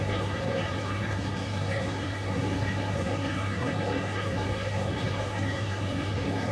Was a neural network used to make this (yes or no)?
yes